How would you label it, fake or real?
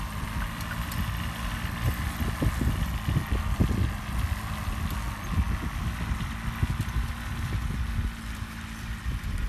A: real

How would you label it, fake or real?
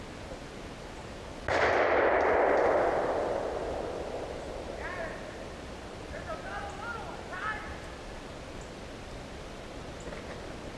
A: real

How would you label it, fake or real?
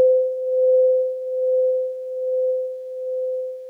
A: fake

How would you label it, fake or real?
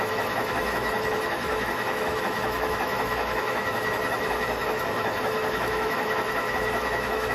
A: fake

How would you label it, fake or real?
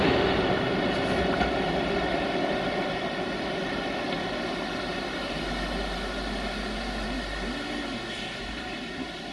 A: real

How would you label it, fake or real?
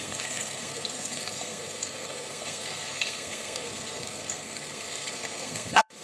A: fake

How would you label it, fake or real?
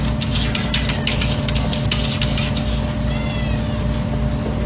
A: real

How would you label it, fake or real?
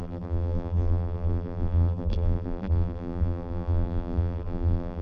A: fake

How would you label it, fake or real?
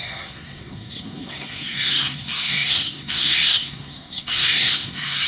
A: fake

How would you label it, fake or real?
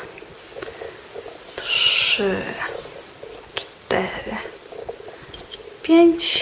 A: real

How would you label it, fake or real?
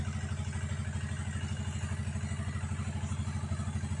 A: real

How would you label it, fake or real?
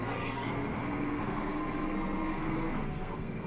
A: fake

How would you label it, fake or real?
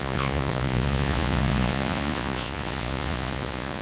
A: fake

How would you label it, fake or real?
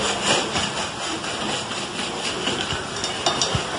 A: real